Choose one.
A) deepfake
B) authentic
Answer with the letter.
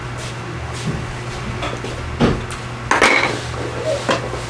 B